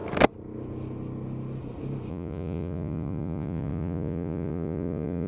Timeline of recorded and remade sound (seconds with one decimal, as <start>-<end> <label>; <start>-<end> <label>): 0.0-2.1 recorded; 2.1-5.3 remade